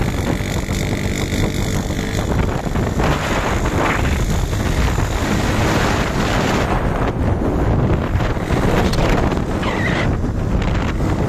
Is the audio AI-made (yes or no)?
no